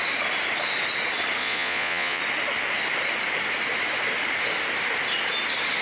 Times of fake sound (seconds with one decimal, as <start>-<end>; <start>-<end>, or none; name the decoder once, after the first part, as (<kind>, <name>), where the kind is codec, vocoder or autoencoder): 1.4-2.2 (vocoder, Vocos)